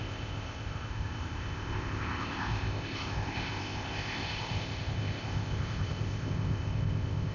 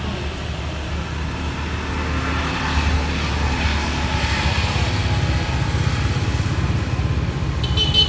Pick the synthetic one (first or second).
first